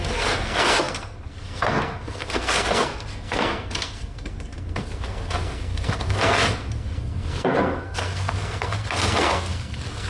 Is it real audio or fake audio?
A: fake